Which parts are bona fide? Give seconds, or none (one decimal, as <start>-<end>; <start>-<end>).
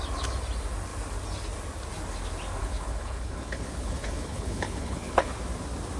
0.0-2.6; 5.3-6.0